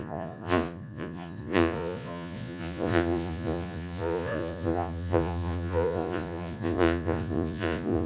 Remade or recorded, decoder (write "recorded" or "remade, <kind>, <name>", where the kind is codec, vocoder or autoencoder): remade, vocoder, Vocos